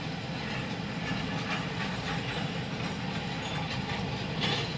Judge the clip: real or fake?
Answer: real